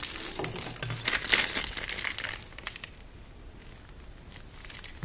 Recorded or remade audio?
recorded